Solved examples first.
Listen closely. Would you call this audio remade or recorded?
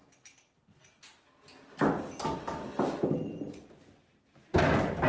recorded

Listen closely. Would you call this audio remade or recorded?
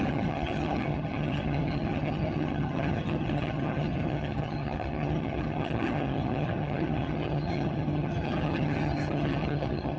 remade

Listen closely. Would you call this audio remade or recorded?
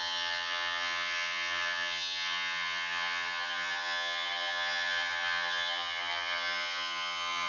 remade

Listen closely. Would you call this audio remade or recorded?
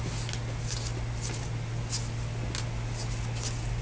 recorded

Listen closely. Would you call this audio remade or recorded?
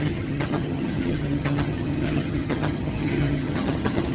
remade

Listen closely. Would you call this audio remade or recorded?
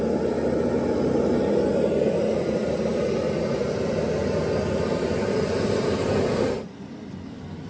recorded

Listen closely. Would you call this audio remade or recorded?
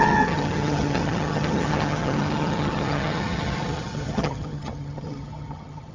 remade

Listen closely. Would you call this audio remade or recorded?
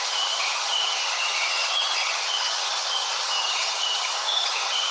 remade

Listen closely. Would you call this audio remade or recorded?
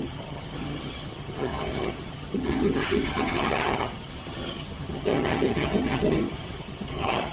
remade